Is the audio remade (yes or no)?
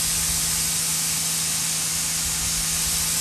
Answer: no